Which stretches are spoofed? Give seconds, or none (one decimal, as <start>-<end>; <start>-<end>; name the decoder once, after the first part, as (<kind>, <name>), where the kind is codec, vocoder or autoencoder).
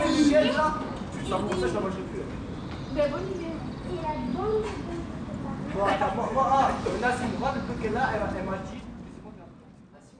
none